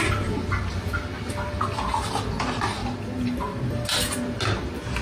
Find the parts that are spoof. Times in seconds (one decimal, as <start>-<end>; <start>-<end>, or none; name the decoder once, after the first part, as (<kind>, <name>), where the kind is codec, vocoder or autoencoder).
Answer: none